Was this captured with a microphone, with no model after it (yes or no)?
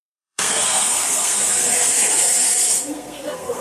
no